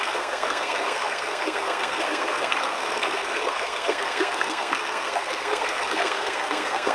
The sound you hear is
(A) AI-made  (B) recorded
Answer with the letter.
A